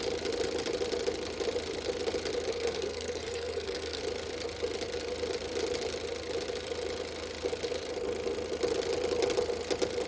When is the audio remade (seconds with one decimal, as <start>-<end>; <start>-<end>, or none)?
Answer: 2.5-4.0